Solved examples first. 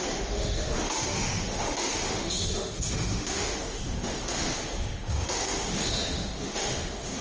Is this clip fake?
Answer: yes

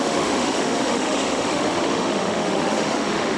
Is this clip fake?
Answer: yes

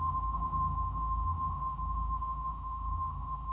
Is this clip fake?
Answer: yes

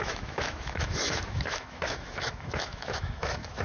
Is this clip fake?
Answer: yes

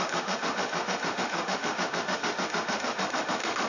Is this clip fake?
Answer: yes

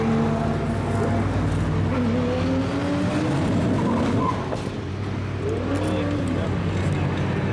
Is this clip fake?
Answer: no